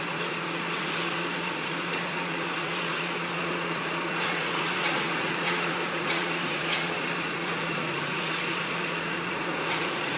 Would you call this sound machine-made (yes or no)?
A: yes